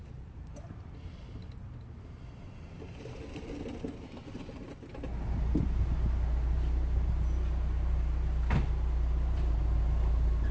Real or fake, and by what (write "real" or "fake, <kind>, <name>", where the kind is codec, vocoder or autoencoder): real